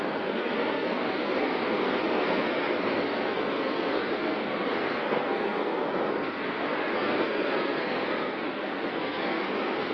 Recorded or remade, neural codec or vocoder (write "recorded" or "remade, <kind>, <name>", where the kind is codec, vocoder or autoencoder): remade, codec, SNAC